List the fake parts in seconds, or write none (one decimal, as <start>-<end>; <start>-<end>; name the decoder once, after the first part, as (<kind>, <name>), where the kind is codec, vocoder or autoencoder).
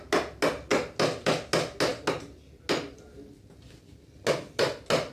none